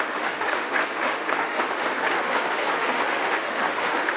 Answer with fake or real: fake